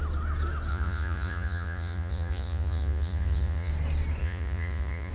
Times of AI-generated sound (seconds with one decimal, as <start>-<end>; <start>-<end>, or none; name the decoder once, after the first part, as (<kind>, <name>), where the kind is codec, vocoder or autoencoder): 0.7-3.7 (vocoder, Vocos); 4.2-5.1